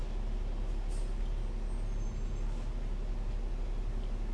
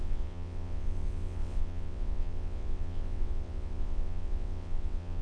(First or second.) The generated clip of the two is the second